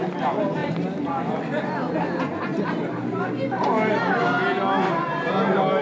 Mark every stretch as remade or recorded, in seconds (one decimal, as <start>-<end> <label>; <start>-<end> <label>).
0.0-0.6 recorded; 0.6-1.4 remade; 1.4-5.8 recorded